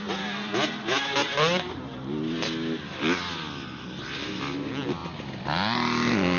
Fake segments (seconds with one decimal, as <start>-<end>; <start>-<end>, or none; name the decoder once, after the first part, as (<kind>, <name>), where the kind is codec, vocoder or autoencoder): none